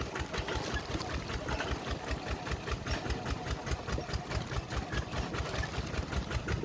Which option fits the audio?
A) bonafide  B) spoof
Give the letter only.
A